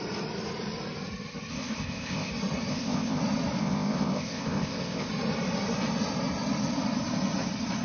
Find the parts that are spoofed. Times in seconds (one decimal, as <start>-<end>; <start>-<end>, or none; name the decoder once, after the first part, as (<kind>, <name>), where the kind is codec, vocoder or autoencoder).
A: 1.5-2.3 (codec, ZipCodec); 2.7-3.2; 3.6-5.1